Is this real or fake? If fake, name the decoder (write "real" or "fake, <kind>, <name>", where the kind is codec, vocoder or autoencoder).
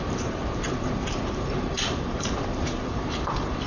fake, vocoder, BigVGAN v2